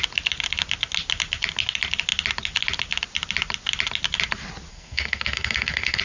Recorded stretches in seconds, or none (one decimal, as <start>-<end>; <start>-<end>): 0.0-4.7